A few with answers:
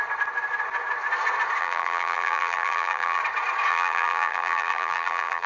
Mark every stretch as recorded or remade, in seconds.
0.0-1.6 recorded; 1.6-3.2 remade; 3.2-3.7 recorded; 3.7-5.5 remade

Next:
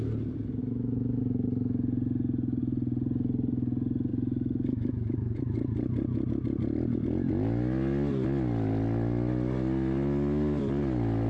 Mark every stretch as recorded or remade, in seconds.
0.0-0.6 recorded; 0.6-1.2 remade; 1.2-4.1 recorded; 4.1-5.4 remade; 5.4-11.3 recorded

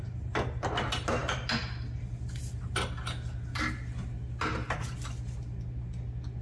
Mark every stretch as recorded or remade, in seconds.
0.0-6.4 recorded

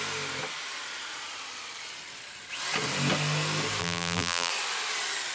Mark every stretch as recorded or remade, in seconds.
0.0-3.8 recorded; 3.8-4.5 remade; 4.5-5.3 recorded

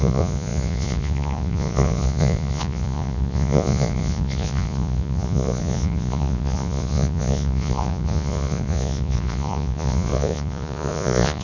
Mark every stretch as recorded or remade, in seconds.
0.0-11.4 remade

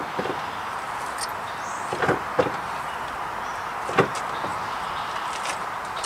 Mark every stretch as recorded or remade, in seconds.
0.0-3.0 recorded; 3.0-3.7 remade; 3.7-6.1 recorded